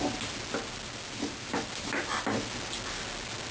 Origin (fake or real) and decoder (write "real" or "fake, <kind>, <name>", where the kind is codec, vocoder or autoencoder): real